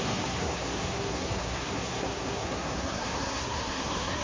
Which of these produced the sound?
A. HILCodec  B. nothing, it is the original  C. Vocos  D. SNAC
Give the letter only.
D